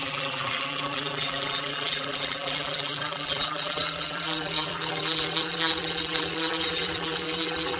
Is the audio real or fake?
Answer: fake